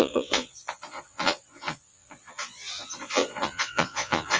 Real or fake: fake